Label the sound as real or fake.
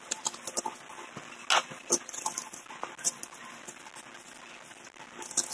real